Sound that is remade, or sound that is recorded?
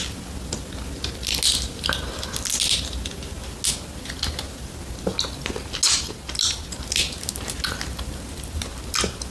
recorded